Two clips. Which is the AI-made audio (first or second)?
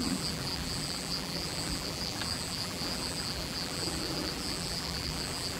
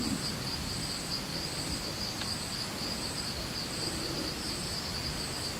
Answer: first